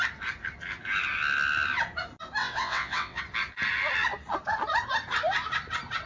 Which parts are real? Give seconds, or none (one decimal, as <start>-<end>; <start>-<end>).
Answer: 0.0-2.4; 3.2-6.1